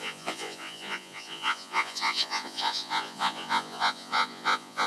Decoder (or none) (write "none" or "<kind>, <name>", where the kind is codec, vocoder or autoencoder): vocoder, Vocos